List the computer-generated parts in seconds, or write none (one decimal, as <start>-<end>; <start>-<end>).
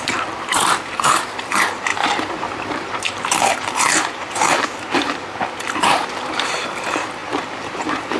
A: 0.0-8.2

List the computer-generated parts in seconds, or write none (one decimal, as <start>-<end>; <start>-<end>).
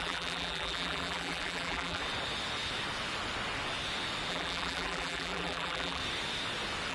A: 0.0-2.0; 4.3-6.0